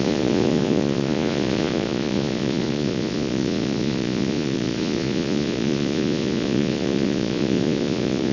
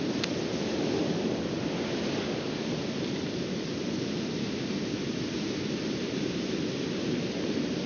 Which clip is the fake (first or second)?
first